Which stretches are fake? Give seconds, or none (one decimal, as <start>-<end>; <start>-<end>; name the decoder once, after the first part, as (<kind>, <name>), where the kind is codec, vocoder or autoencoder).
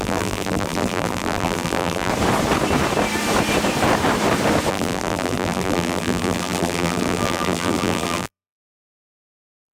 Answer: 0.0-2.1 (vocoder, BigVGAN v2); 4.7-9.7